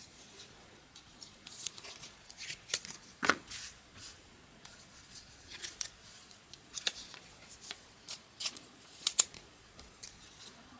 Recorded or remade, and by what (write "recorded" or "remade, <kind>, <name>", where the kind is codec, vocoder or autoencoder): remade, vocoder, Vocos